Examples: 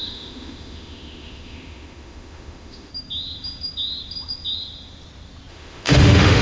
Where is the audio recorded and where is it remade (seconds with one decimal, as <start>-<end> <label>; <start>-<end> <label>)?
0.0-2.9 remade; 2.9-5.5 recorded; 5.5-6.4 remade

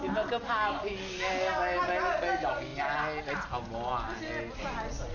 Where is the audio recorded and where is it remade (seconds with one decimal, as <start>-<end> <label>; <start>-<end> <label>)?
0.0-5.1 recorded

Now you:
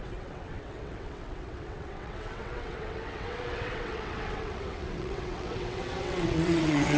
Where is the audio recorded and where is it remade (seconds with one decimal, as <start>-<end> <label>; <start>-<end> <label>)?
0.0-7.0 remade

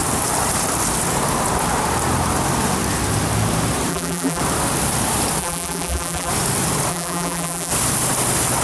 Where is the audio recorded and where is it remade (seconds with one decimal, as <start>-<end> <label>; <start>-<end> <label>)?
0.0-3.9 recorded; 3.9-4.4 remade; 4.4-5.4 recorded; 5.4-6.3 remade; 6.3-6.9 recorded; 6.9-7.7 remade; 7.7-8.6 recorded